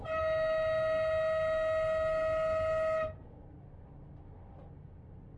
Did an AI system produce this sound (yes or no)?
no